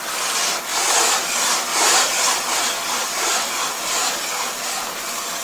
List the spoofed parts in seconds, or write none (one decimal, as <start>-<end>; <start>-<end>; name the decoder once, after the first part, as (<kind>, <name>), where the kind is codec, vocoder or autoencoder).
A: 0.7-1.2 (vocoder, BigVGAN v2); 1.7-2.3; 3.0-3.6